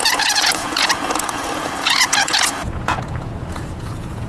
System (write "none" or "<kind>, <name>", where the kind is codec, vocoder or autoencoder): vocoder, Vocos